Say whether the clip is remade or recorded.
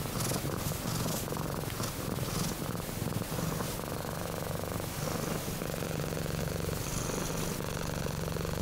recorded